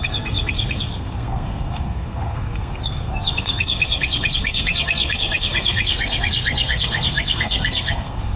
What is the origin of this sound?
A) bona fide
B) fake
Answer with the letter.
B